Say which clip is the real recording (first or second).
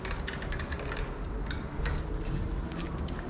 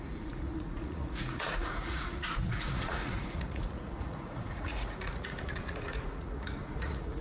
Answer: first